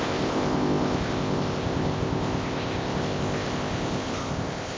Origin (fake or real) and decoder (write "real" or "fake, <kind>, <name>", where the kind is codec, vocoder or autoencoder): fake, codec, ZipCodec